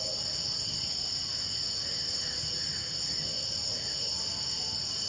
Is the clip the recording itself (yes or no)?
yes